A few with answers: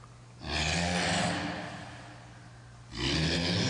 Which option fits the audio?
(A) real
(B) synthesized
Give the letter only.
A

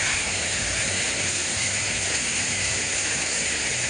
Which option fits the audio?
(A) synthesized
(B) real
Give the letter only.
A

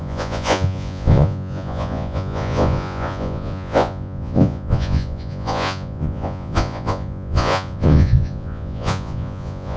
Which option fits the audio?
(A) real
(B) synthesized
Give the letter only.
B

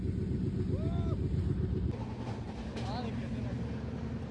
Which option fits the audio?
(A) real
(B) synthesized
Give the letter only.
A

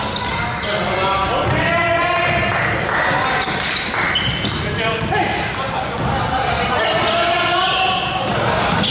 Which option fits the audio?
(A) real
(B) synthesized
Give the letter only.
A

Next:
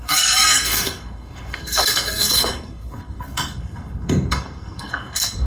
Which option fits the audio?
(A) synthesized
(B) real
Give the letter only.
A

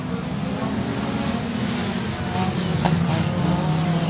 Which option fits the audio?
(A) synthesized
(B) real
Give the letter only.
B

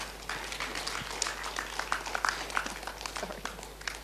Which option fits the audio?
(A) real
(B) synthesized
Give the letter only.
A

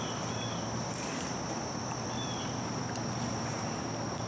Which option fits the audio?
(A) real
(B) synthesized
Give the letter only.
A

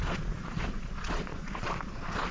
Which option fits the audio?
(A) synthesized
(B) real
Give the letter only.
A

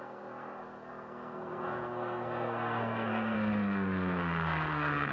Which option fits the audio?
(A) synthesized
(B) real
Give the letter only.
A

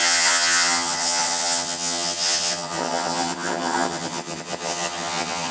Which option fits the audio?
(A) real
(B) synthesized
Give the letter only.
B